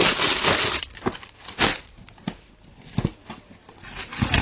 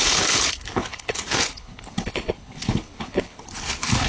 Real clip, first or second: first